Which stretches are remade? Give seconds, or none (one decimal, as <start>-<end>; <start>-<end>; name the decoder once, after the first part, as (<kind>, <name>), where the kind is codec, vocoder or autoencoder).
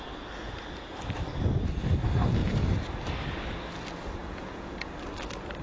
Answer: 4.2-4.9 (vocoder, Vocos)